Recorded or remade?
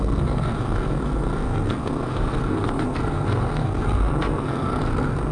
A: remade